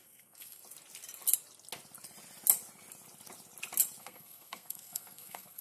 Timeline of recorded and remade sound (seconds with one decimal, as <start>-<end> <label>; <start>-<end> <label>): 0.0-0.6 remade; 0.6-4.0 recorded; 4.0-5.6 remade